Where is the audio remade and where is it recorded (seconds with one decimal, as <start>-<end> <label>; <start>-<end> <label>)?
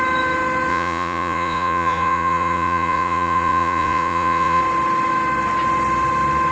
0.0-0.7 recorded; 0.7-4.6 remade; 4.6-6.5 recorded